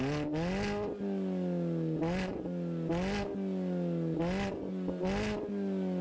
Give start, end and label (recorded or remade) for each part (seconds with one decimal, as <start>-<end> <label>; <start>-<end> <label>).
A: 0.0-6.0 recorded